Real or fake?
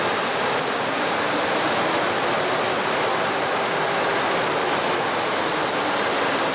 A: real